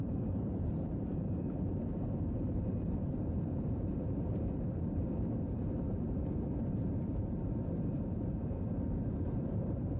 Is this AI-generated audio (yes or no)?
yes